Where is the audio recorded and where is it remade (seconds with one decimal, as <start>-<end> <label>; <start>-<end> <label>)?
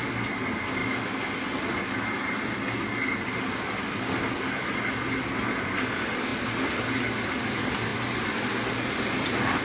0.0-9.6 recorded